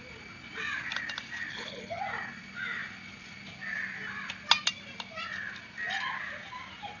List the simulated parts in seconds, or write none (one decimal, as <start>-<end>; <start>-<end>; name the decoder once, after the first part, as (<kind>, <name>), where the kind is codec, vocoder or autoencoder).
1.5-2.0 (codec, HILCodec)